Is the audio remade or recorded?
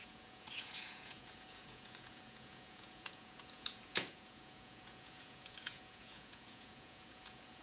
remade